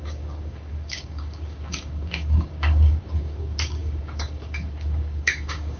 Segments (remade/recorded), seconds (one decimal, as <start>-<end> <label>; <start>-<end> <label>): 0.0-5.8 remade

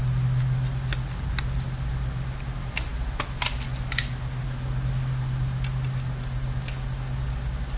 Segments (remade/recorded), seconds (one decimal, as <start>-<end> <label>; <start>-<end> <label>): 0.0-7.8 recorded